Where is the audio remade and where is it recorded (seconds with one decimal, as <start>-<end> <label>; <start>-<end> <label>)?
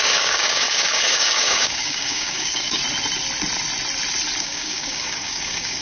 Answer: 0.0-2.8 remade; 2.8-4.4 recorded; 4.4-5.8 remade